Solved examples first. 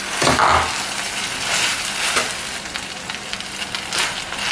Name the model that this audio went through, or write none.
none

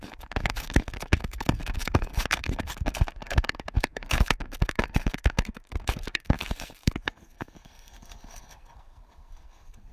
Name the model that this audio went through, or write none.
codec, SNAC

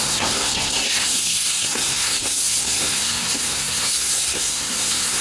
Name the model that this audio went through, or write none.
codec, SNAC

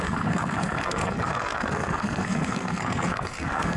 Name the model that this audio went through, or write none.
codec, SNAC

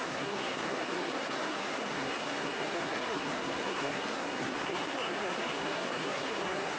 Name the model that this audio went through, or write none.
codec, SNAC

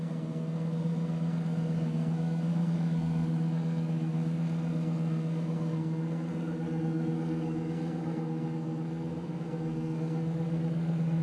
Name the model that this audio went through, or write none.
codec, SNAC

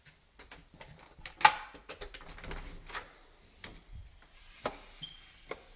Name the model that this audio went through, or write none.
none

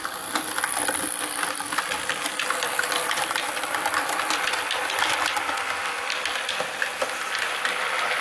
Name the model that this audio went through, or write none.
none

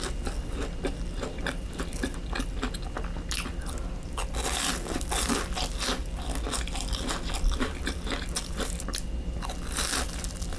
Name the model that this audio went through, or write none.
none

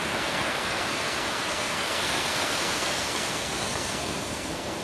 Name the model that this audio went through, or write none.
codec, SNAC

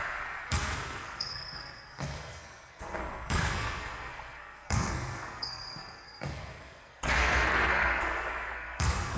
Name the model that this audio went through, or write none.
codec, SNAC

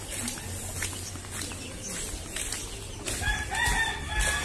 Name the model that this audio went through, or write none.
none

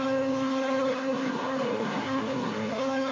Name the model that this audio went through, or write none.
codec, SNAC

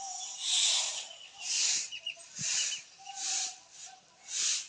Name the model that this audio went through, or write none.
none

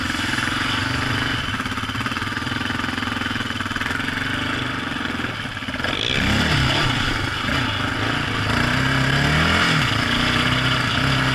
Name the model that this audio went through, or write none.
none